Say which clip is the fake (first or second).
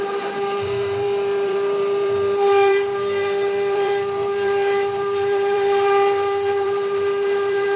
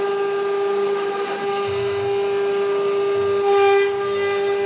first